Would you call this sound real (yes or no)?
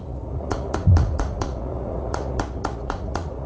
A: no